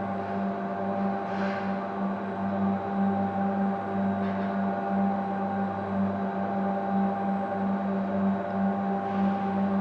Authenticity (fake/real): real